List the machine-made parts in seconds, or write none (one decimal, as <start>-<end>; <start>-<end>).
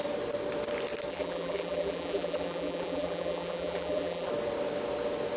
1.1-4.3